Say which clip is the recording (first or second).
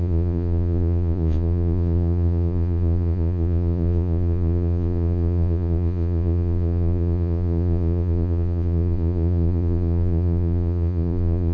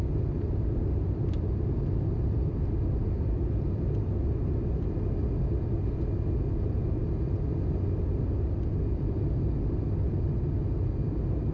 second